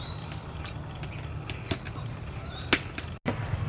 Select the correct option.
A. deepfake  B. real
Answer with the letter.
B